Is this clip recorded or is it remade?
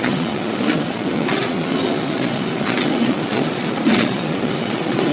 remade